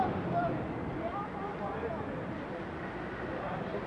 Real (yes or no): yes